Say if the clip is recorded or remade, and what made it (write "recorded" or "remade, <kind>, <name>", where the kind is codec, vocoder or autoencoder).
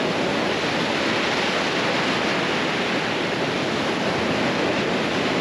recorded